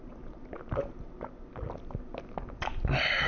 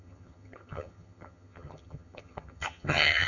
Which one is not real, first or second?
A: second